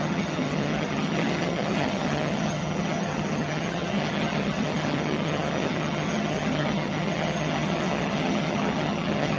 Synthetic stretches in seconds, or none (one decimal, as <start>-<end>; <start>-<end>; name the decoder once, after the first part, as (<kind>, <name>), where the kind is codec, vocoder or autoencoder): 0.0-9.4 (vocoder, HiFi-GAN)